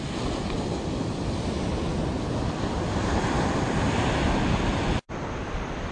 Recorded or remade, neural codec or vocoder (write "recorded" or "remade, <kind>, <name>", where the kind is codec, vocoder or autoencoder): recorded